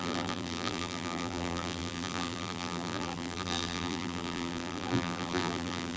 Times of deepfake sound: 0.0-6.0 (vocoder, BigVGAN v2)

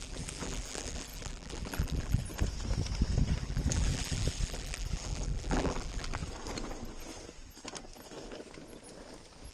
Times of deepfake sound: 0.0-2.2 (vocoder, BigVGAN v2); 3.4-6.2

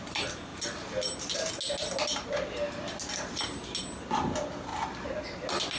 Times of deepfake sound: none